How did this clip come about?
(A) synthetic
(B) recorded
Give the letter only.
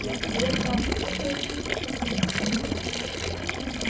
B